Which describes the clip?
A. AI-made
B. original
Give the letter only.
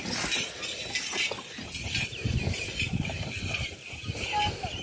B